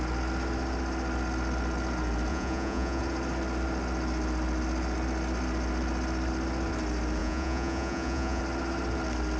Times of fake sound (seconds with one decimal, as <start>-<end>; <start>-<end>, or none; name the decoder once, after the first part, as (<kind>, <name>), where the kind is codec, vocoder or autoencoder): 2.3-3.0 (vocoder, Vocos); 7.2-8.4